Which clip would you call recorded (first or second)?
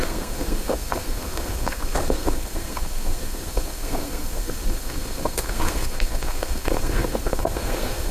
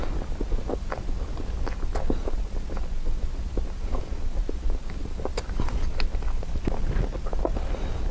second